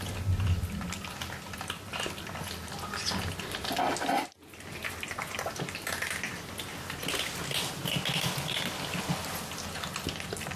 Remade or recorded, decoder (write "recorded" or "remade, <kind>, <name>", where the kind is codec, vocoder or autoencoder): recorded